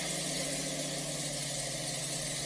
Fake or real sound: real